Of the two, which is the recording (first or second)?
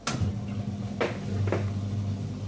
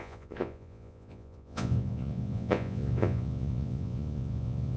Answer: first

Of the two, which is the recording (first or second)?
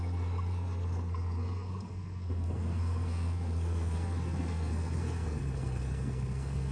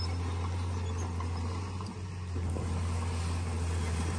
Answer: second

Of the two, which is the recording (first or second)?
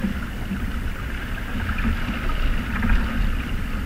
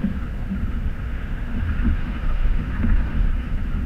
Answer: first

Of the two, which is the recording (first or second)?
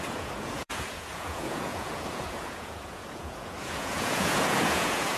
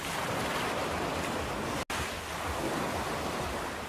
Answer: second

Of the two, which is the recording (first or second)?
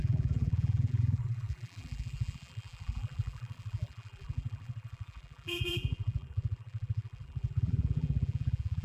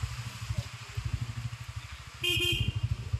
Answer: second